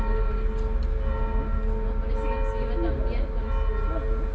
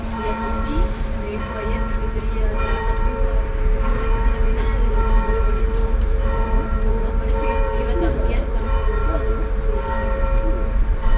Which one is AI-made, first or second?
second